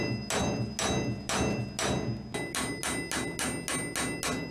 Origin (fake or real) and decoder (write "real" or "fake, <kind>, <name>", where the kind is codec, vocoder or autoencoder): real